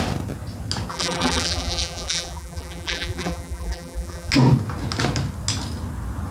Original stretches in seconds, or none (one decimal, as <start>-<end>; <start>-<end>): 0.0-0.9; 4.3-6.3